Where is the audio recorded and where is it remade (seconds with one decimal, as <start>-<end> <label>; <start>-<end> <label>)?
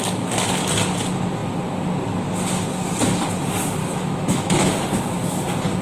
0.0-3.8 recorded; 3.8-4.7 remade; 4.7-5.8 recorded